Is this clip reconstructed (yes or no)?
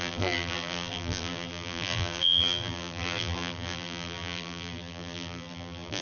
yes